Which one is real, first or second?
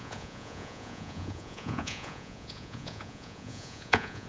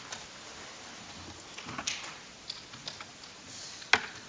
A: second